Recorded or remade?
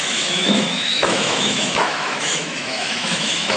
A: remade